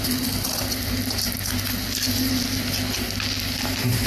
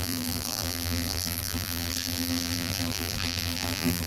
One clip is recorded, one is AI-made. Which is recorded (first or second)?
first